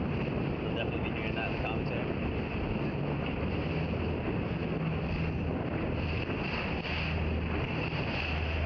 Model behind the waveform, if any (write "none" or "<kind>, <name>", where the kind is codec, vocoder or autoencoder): none